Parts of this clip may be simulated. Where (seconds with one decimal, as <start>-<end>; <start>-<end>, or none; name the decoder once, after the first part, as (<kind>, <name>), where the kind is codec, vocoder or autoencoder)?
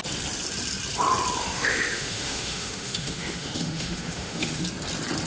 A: 1.4-4.6 (autoencoder, DAC-VAE)